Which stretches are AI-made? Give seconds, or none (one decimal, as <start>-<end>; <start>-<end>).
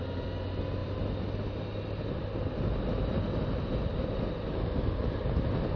none